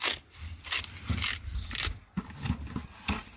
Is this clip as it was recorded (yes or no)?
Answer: yes